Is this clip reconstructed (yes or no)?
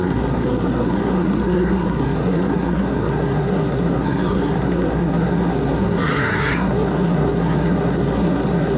yes